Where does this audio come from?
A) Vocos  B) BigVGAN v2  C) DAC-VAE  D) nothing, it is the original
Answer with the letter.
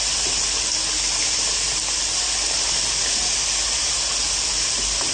D